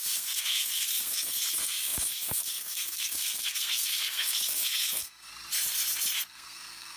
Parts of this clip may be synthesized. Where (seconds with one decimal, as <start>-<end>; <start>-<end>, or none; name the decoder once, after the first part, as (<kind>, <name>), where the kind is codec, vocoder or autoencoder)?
0.0-5.3 (codec, SNAC); 6.3-7.0